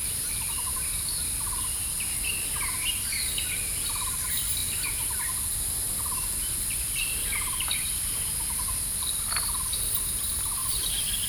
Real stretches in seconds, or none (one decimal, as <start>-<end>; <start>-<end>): 0.5-4.6; 6.5-8.9; 9.8-10.6